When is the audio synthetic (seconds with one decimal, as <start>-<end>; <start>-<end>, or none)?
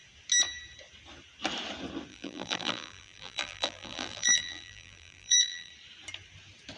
2.1-5.7